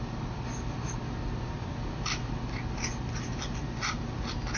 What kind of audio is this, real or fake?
real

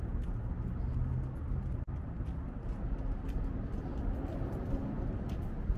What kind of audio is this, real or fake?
real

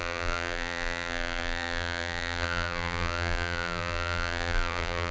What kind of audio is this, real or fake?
fake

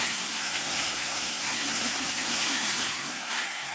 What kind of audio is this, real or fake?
fake